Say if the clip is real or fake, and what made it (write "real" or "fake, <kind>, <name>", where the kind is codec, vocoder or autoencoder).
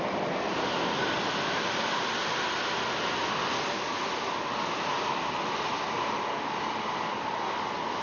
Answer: real